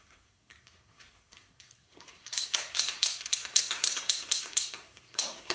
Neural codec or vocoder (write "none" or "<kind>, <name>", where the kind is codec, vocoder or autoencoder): codec, SNAC